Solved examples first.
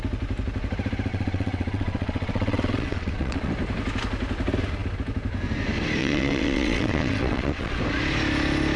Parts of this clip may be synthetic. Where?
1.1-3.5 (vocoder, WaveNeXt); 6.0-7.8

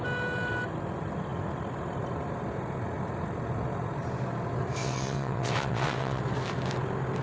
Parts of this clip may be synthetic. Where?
4.8-6.2 (vocoder, WaveNeXt)

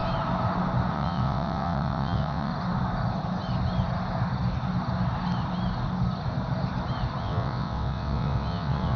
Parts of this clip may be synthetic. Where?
0.9-2.5 (vocoder, WaveNeXt); 7.2-9.0

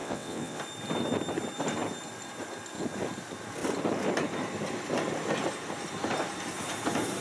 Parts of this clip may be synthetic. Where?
0.0-0.6 (vocoder, WaveNeXt)

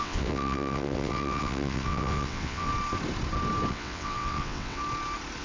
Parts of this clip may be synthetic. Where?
0.0-2.7 (vocoder, WaveNeXt); 3.7-4.8